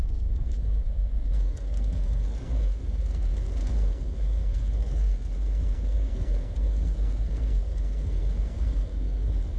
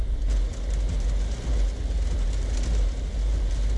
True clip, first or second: second